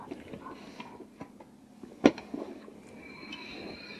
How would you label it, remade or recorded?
recorded